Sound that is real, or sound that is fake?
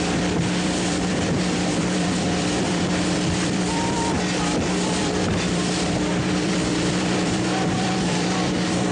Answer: fake